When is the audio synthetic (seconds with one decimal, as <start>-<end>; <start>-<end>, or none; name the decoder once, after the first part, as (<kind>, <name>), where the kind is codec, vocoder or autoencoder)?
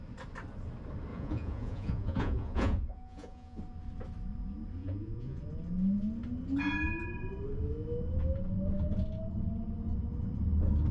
1.1-3.6 (vocoder, Vocos); 4.8-5.4